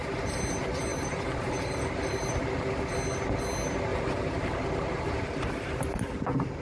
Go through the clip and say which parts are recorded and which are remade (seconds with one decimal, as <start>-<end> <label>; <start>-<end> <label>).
0.0-0.9 recorded; 0.9-2.3 remade; 2.3-3.9 recorded; 3.9-5.7 remade; 5.7-6.6 recorded